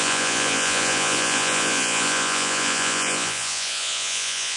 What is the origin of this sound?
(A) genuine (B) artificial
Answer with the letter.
B